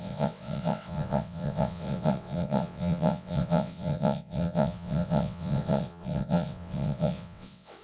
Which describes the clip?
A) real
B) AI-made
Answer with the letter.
B